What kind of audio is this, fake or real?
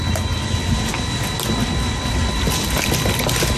real